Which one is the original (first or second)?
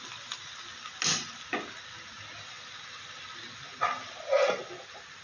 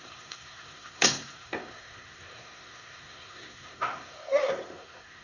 first